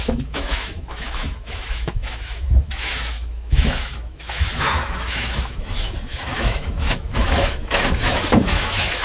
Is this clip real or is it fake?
fake